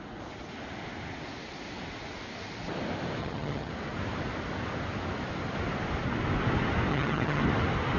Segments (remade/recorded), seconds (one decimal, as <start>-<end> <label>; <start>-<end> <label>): 0.0-3.2 recorded; 3.2-3.7 remade; 3.7-6.9 recorded; 6.9-7.4 remade; 7.4-8.0 recorded